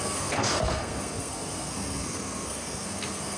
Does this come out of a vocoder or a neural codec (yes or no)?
yes